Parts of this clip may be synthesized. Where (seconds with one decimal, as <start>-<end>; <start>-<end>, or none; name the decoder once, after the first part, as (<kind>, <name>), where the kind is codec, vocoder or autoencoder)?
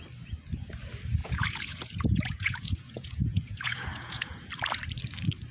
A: 1.2-4.5 (vocoder, Vocos)